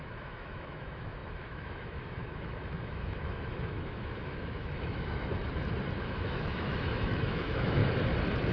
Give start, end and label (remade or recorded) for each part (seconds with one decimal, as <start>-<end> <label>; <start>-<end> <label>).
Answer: 0.0-5.4 remade; 5.4-6.0 recorded; 6.0-7.8 remade; 7.8-8.5 recorded